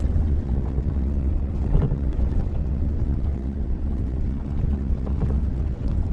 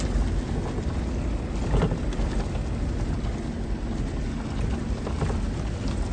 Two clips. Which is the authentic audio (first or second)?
second